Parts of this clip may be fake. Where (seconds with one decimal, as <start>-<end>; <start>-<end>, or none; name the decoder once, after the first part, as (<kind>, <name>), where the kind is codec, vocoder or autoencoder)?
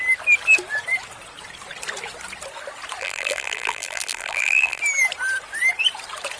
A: 3.0-4.8 (vocoder, BigVGAN v2)